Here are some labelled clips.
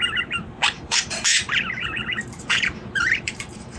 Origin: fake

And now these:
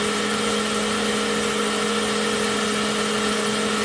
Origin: real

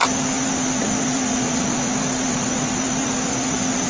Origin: fake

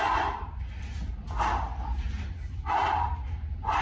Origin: real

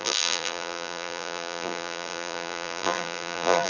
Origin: fake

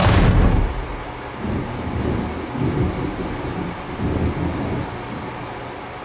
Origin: real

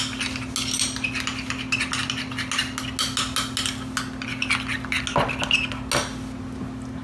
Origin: real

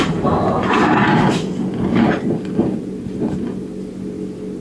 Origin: real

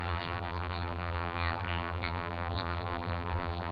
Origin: fake